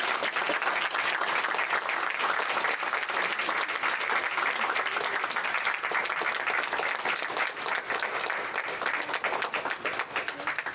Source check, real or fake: real